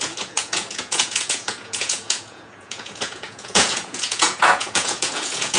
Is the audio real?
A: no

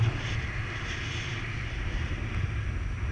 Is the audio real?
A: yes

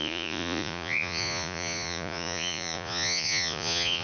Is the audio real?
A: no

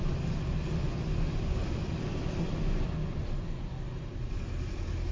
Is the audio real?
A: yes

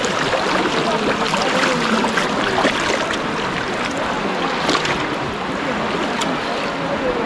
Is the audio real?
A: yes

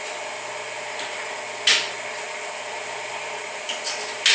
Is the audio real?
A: yes